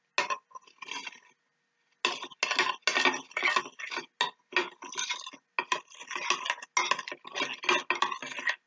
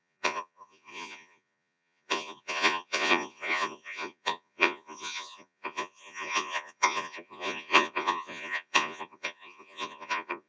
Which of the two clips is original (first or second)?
first